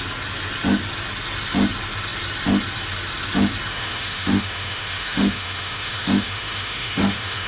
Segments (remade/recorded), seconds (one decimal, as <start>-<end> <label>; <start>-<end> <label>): 0.0-3.7 recorded; 3.7-7.5 remade